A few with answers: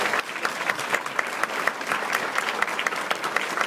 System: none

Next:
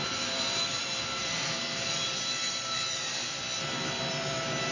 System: vocoder, BigVGAN v2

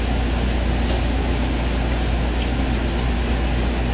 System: none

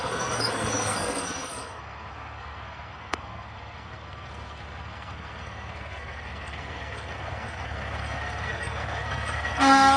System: codec, SNAC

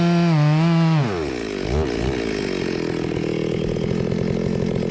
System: none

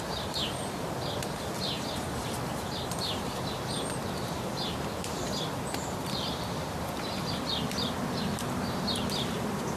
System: vocoder, BigVGAN v2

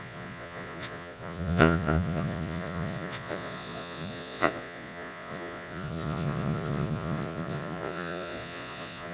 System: vocoder, Vocos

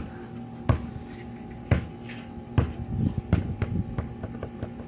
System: none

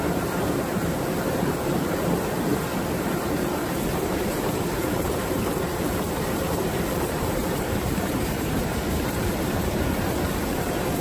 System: vocoder, BigVGAN v2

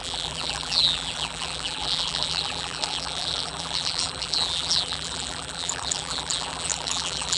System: vocoder, BigVGAN v2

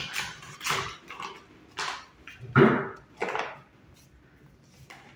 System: none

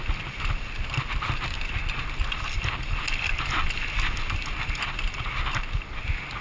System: none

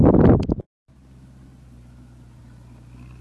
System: none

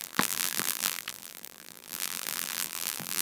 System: vocoder, BigVGAN v2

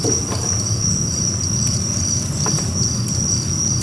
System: none